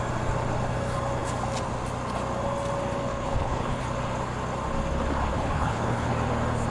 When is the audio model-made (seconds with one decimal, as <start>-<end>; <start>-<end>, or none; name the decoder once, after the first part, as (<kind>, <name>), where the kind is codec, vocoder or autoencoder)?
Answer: 3.1-3.8 (codec, HILCodec); 5.3-6.1

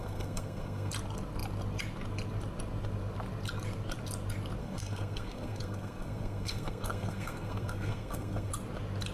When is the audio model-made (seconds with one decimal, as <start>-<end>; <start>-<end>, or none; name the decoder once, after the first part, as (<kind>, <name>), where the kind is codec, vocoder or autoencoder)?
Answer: 0.0-0.9 (codec, SNAC); 4.6-8.5